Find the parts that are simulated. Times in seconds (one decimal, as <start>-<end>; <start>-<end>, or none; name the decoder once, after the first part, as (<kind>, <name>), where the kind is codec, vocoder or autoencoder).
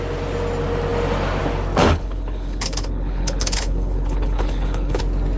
1.8-5.0 (codec, HILCodec)